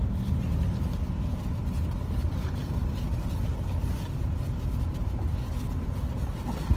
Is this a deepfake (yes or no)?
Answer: no